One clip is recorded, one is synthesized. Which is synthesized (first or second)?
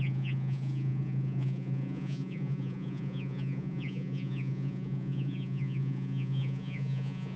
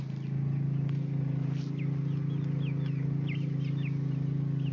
first